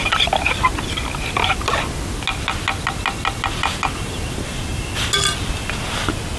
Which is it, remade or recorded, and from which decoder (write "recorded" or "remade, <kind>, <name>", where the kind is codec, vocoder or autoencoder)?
recorded